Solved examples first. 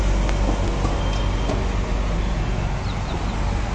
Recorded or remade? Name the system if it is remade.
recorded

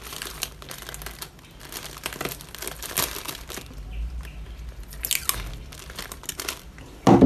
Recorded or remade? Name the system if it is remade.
recorded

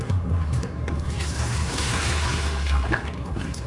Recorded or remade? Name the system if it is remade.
remade, codec, SNAC